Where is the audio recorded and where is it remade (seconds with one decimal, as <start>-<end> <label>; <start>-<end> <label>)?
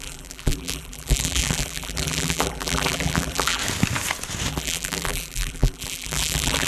0.0-3.6 remade; 3.6-4.5 recorded; 4.5-6.7 remade